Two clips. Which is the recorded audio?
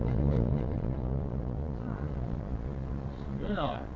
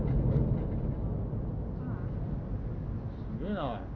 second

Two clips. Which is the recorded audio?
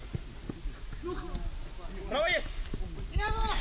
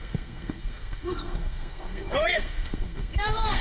first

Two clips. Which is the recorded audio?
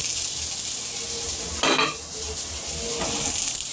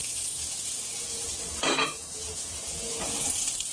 first